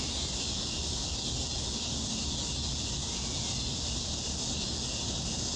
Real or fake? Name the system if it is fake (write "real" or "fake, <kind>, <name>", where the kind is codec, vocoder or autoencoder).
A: real